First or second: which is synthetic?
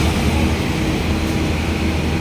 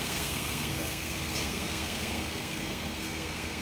second